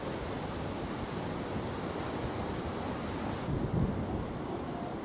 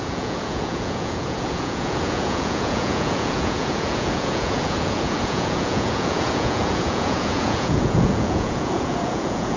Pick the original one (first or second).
first